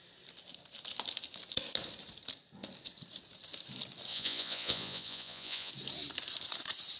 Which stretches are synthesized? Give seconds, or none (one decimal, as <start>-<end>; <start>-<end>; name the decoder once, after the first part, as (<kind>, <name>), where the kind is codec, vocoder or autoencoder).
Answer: 4.1-5.7 (vocoder, Vocos)